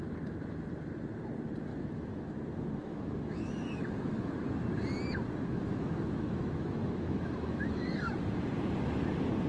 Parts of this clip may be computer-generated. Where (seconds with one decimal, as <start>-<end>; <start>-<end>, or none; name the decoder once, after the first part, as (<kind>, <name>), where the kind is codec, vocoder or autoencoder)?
1.7-2.3 (autoencoder, DAC-VAE); 2.8-4.3; 5.5-8.2